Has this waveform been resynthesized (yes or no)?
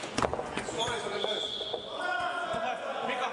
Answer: yes